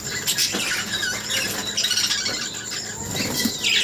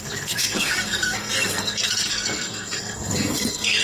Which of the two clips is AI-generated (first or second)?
second